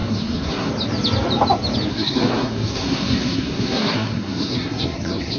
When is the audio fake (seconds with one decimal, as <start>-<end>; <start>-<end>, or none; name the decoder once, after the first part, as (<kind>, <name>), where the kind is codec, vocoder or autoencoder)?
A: 0.0-0.7 (codec, SNAC); 1.9-5.4